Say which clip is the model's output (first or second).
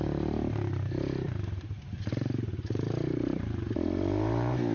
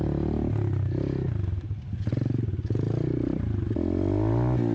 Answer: first